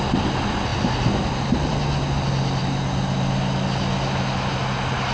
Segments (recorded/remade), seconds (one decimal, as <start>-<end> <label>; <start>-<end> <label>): 0.0-5.1 recorded